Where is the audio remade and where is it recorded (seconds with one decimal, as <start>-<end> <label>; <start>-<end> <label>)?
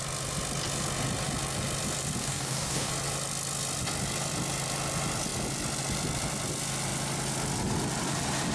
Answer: 0.0-2.2 recorded; 2.2-2.9 remade; 2.9-8.5 recorded